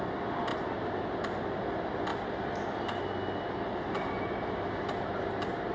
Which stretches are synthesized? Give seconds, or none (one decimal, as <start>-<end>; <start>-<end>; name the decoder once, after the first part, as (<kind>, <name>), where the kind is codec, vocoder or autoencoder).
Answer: none

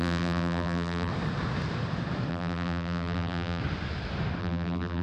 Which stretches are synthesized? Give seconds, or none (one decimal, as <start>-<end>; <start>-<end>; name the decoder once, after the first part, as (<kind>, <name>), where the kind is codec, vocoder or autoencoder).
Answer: 0.0-1.1 (vocoder, BigVGAN v2); 2.3-3.6; 4.4-5.0

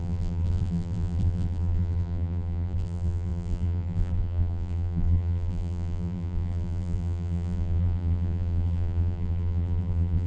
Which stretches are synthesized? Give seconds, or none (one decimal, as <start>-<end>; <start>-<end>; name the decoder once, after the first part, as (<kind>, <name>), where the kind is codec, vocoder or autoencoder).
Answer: 0.0-10.3 (vocoder, BigVGAN v2)

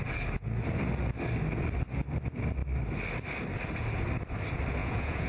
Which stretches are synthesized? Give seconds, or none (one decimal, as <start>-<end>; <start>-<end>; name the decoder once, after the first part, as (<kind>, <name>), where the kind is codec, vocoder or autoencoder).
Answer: 4.8-5.3 (vocoder, Vocos)

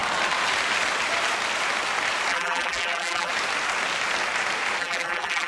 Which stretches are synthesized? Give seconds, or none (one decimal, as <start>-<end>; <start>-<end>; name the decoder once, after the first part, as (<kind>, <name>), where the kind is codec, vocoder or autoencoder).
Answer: 2.3-3.3 (vocoder, BigVGAN v2); 4.8-5.5

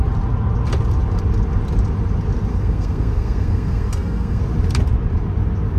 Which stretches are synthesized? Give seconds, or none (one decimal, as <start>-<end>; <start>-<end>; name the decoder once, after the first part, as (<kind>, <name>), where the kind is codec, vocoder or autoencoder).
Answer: 2.5-4.4 (codec, SNAC)

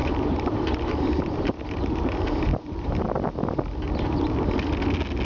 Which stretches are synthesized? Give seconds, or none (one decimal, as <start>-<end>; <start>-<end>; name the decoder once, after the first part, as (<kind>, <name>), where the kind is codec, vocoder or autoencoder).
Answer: 0.0-3.0 (vocoder, BigVGAN v2)

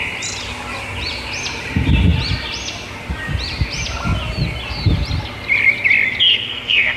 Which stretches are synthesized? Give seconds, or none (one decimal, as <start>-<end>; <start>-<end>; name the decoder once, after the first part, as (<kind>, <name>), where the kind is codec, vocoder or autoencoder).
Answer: 6.3-7.0 (codec, SNAC)